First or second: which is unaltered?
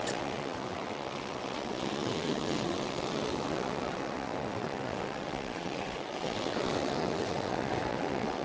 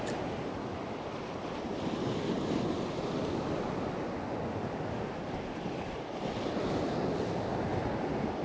second